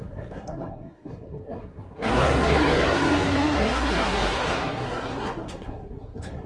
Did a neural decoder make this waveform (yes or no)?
yes